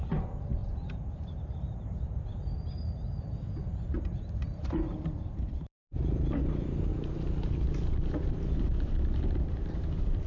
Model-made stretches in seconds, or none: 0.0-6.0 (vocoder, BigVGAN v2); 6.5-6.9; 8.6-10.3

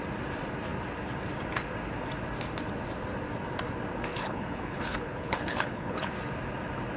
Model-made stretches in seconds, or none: 4.1-6.1 (codec, HILCodec)